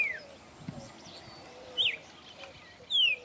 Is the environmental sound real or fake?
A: real